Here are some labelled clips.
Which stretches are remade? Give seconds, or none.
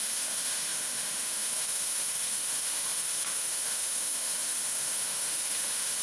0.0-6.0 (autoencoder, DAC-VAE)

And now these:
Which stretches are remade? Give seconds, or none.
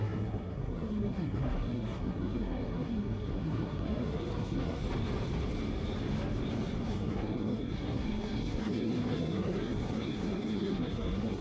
0.0-4.8 (codec, SNAC); 6.9-11.4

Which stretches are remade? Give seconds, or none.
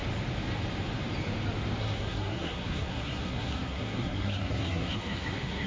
1.8-5.7 (codec, SNAC)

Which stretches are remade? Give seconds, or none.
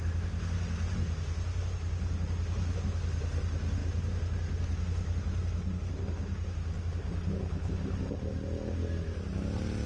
none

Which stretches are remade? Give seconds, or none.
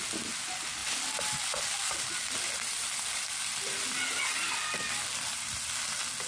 none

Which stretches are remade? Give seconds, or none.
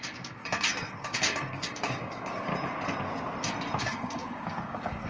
0.0-2.5 (codec, DAC); 3.8-5.1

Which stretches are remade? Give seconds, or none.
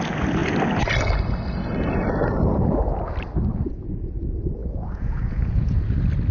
3.5-4.1 (vocoder, Vocos); 4.6-5.8